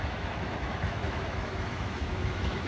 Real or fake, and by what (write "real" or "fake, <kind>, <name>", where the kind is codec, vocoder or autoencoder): fake, autoencoder, DAC-VAE